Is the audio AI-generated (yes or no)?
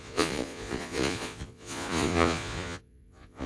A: yes